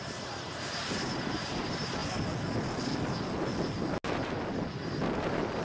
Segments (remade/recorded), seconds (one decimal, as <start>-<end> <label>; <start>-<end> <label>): 0.0-2.0 remade; 2.0-5.6 recorded